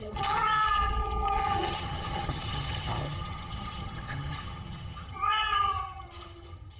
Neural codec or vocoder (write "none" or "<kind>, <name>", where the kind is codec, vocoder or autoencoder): vocoder, HiFi-GAN